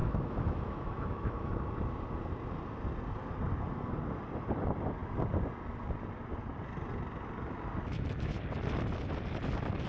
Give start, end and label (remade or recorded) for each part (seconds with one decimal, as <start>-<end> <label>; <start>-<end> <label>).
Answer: 0.0-1.5 remade; 1.5-7.9 recorded; 7.9-8.4 remade; 8.4-9.9 recorded